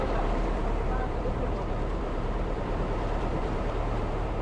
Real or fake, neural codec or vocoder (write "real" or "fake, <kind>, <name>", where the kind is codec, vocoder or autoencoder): fake, vocoder, BigVGAN v2